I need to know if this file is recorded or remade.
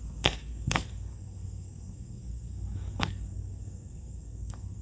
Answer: remade